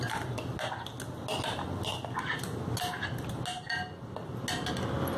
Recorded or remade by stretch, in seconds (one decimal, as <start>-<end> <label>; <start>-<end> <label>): 0.0-5.2 recorded